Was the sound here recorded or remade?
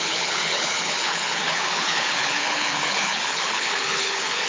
remade